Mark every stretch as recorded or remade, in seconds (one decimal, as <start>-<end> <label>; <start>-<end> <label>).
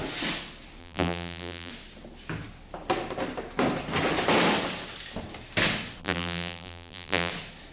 0.0-0.8 recorded; 0.8-1.7 remade; 1.7-6.0 recorded; 6.0-7.3 remade; 7.3-7.7 recorded